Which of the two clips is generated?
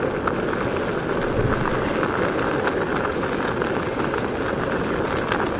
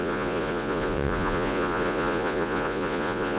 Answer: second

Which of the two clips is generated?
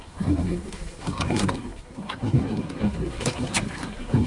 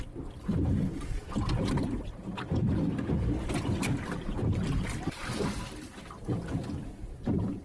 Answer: first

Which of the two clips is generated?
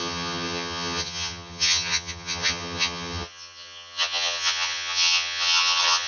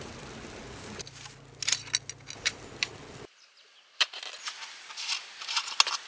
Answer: first